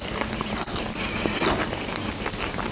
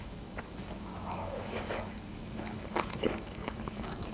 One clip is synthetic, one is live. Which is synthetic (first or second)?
second